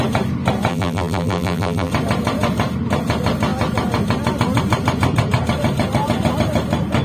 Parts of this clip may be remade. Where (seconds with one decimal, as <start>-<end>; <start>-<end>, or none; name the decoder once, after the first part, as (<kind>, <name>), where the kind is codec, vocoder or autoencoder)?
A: 0.7-1.9 (vocoder, BigVGAN v2)